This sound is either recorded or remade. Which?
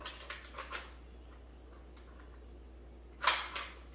recorded